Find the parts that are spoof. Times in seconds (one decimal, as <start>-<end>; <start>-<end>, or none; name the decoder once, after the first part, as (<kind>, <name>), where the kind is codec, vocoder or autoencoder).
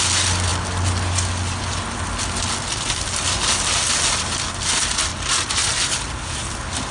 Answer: none